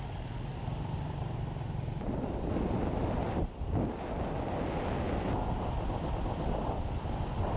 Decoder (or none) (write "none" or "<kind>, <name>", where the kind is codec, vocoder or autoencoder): none